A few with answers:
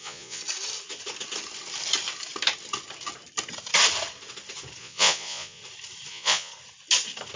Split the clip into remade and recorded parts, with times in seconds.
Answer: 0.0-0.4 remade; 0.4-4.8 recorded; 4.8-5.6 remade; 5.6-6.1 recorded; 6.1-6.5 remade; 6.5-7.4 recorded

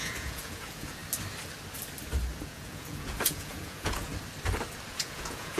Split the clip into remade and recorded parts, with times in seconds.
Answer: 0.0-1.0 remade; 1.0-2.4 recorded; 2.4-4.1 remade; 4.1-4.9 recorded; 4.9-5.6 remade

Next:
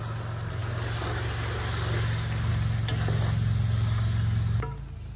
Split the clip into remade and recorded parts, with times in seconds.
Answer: 0.0-5.2 recorded

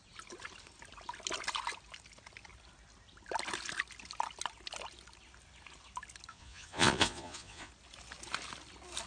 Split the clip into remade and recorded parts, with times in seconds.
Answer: 0.0-6.3 recorded; 6.3-7.7 remade; 7.7-9.1 recorded

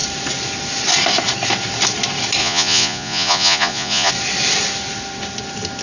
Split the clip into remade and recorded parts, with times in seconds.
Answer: 0.0-2.4 recorded; 2.4-4.1 remade; 4.1-5.8 recorded

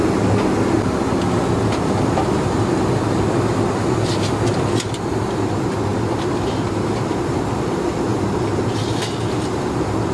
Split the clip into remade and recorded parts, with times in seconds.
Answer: 0.0-10.1 recorded

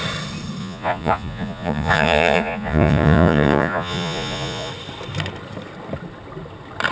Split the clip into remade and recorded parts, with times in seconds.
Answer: 0.0-0.6 recorded; 0.6-4.7 remade; 4.7-6.9 recorded

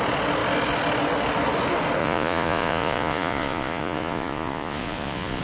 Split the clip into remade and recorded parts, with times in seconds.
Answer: 0.0-2.0 recorded; 2.0-5.4 remade